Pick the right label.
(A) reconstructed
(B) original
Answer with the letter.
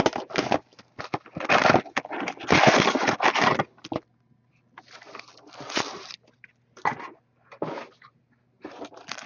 B